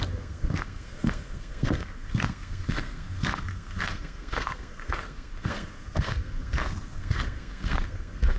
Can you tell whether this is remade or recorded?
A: remade